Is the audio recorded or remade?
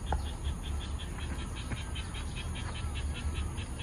recorded